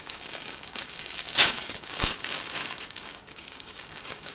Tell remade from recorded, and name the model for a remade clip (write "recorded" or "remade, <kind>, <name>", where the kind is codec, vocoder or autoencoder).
remade, codec, DAC